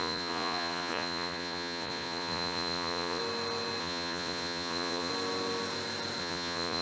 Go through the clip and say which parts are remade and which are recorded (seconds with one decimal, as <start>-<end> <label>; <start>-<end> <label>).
0.0-3.2 remade; 3.2-3.8 recorded; 3.8-5.1 remade; 5.1-6.2 recorded; 6.2-6.8 remade